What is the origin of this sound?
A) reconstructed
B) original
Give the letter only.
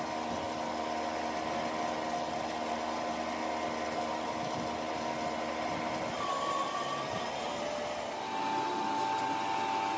B